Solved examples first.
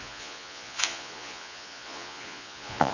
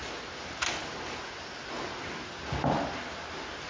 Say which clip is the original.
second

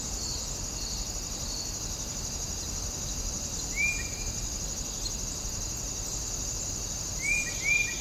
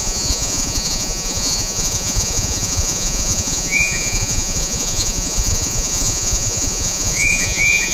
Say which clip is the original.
first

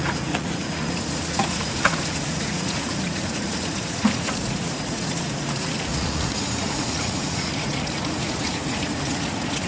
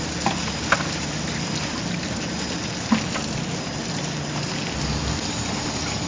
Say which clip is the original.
second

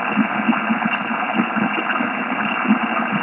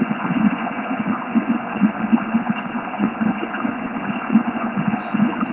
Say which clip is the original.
first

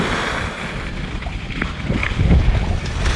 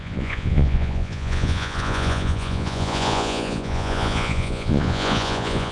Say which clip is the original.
first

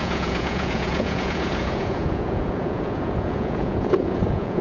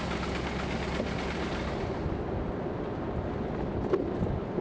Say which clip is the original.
second